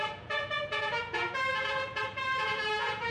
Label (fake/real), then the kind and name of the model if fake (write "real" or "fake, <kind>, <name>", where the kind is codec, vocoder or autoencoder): fake, vocoder, Vocos